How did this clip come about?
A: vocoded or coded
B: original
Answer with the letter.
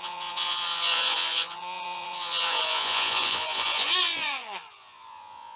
A